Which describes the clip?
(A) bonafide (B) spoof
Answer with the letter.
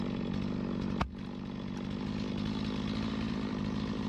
B